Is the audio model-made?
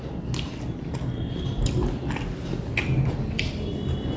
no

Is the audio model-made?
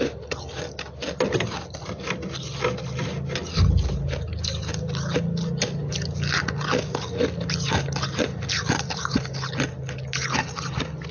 no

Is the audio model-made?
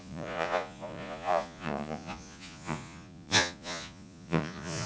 yes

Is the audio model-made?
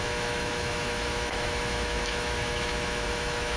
yes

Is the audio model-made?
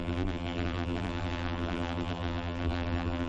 yes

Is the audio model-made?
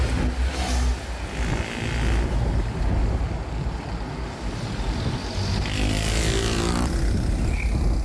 no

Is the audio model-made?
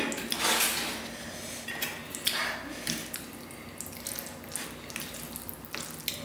no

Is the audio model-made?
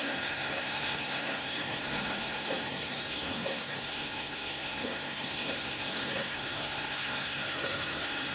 yes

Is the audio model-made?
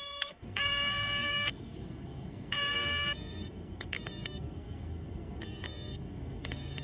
yes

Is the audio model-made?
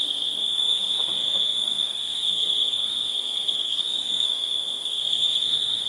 yes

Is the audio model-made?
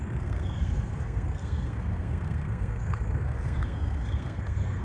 yes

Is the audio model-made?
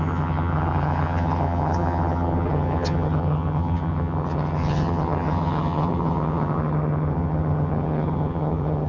yes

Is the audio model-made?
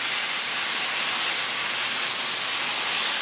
no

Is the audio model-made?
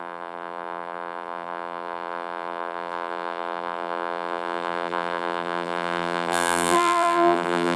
yes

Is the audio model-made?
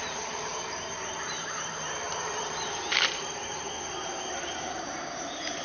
yes